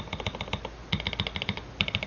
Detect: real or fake real